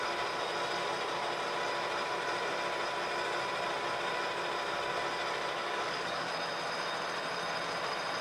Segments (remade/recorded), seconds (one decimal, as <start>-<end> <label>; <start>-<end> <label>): 0.0-5.6 recorded; 5.6-6.3 remade; 6.3-8.2 recorded